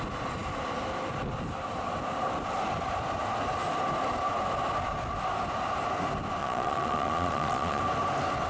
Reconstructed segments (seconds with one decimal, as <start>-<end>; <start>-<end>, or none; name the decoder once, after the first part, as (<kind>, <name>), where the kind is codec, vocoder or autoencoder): 6.4-7.8 (vocoder, Vocos)